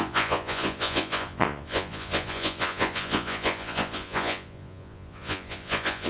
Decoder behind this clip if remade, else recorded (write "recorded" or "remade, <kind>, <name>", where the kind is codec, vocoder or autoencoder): remade, vocoder, Vocos